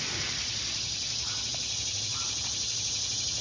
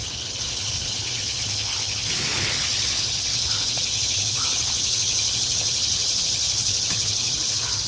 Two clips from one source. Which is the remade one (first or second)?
second